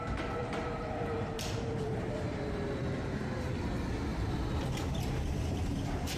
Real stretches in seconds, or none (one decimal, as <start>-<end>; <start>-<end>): 0.0-0.4; 3.6-4.1